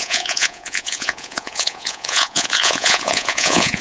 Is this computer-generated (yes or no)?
yes